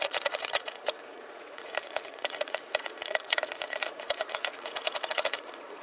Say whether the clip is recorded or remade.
remade